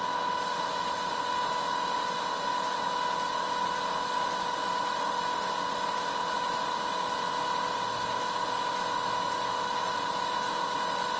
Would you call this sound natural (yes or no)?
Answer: yes